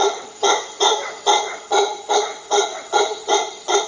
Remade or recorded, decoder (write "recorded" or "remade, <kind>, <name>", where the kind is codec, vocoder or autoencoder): remade, vocoder, WaveNeXt